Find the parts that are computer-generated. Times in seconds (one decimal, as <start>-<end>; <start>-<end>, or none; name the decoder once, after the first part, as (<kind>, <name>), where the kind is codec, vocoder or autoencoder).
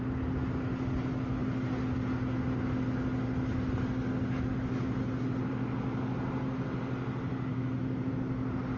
7.5-8.1 (autoencoder, DAC-VAE)